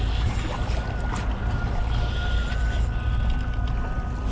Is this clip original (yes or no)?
yes